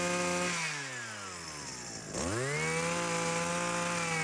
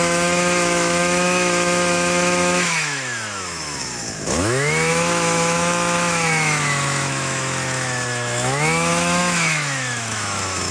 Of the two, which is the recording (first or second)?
first